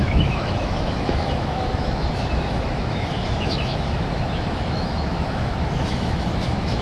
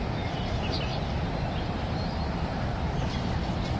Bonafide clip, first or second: second